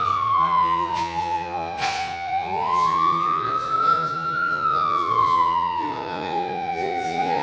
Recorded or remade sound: remade